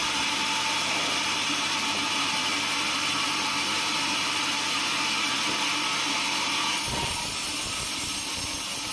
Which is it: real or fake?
real